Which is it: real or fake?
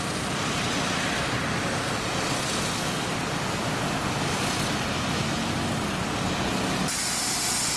real